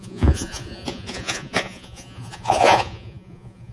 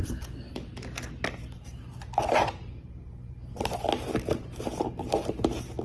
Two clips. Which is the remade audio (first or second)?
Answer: first